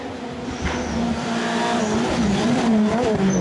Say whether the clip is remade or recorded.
recorded